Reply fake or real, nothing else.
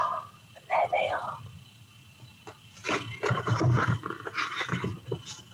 real